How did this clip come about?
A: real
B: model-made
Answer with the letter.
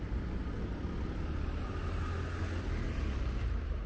A